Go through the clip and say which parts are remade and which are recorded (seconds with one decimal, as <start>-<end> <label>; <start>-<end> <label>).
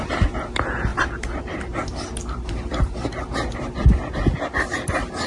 0.0-0.9 recorded; 0.9-4.1 remade; 4.1-5.3 recorded